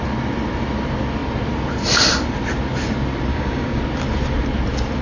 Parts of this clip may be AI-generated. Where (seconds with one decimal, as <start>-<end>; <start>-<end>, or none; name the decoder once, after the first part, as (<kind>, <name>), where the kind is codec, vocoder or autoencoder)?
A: 3.3-3.8 (codec, DAC)